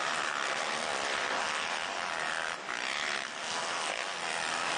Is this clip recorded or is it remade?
recorded